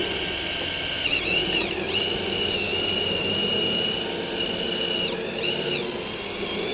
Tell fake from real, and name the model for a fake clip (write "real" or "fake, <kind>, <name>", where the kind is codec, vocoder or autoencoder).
real